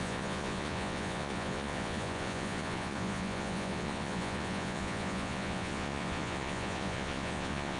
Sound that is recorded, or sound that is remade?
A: remade